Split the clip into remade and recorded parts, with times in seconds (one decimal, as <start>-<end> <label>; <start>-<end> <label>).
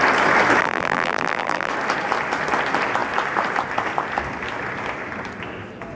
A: 0.0-0.6 recorded; 0.6-1.7 remade; 1.7-5.9 recorded